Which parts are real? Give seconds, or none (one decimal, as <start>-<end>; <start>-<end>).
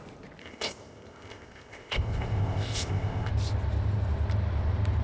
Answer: 0.0-0.4; 3.3-5.0